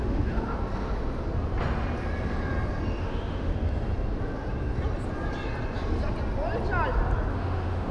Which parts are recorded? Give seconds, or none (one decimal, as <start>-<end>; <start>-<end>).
0.6-3.0; 3.5-7.3